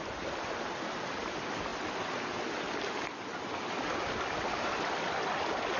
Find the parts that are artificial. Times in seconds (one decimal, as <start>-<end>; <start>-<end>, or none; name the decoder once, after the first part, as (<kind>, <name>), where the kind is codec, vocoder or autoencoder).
none